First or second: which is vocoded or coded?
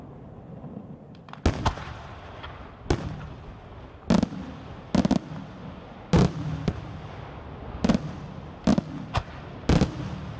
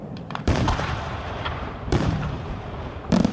second